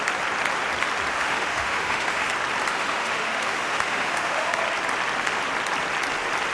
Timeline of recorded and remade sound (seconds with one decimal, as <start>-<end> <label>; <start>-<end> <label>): 0.0-1.1 recorded; 1.1-2.3 remade; 2.3-2.7 recorded; 2.7-4.6 remade; 4.6-6.5 recorded

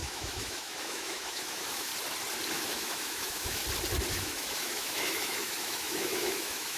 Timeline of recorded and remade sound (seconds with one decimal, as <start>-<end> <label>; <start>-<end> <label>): 0.0-1.9 remade; 1.9-2.5 recorded; 2.5-3.6 remade; 3.6-4.1 recorded; 4.1-6.8 remade

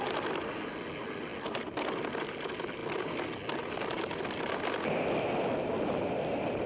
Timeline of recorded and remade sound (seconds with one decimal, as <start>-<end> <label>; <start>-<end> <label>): 0.0-6.7 recorded

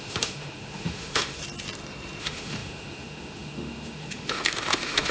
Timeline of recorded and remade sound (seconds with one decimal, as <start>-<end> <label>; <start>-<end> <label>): 0.0-1.4 remade; 1.4-2.2 recorded; 2.2-5.1 remade

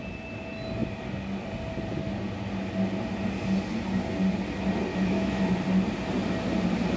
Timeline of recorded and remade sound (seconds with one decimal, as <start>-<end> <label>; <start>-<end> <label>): 0.0-4.9 recorded; 4.9-5.4 remade; 5.4-7.0 recorded

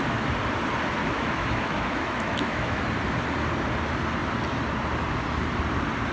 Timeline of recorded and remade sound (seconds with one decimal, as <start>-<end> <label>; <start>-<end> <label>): 0.0-1.0 recorded; 1.0-2.8 remade; 2.8-6.1 recorded